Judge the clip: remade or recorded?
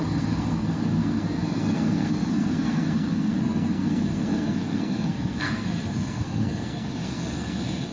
remade